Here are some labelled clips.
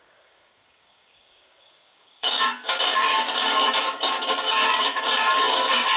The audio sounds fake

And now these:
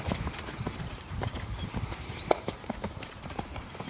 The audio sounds fake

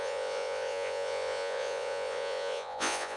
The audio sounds fake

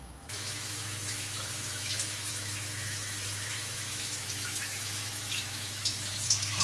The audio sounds fake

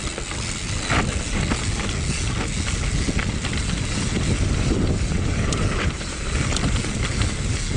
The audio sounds real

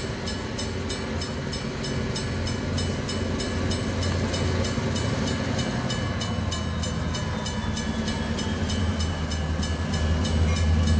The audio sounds real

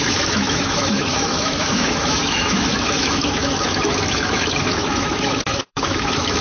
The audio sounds fake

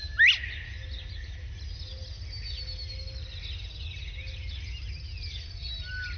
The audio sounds real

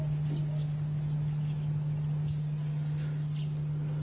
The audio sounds real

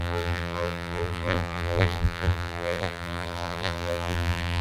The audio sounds fake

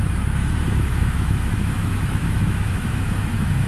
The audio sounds fake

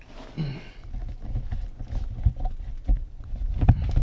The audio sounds real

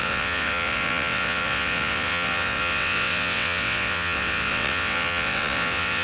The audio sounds fake